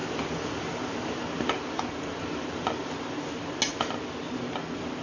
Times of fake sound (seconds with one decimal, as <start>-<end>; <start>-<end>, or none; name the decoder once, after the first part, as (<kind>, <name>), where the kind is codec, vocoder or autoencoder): none